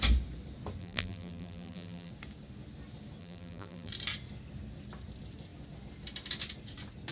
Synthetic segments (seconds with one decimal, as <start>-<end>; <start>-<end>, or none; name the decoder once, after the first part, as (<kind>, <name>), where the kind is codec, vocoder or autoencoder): 0.8-2.1 (vocoder, BigVGAN v2); 3.2-3.9